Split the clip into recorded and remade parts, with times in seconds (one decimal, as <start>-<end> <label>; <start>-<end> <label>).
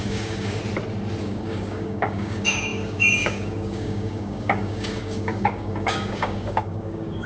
0.0-0.6 remade; 0.6-1.2 recorded; 1.2-7.3 remade